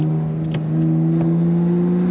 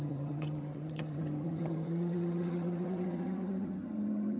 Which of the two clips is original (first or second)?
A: first